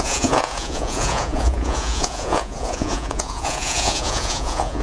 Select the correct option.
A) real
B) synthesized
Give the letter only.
B